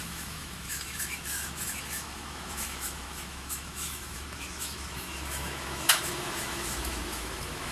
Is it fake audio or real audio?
fake